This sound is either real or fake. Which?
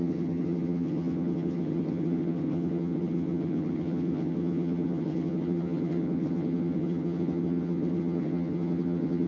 fake